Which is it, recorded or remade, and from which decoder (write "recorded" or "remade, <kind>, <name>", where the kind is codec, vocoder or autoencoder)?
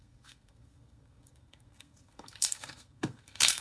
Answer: remade, codec, SNAC